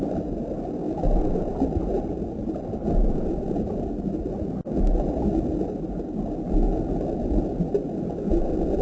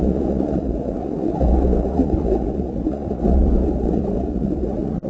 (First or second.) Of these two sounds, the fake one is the second